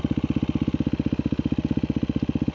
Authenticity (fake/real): real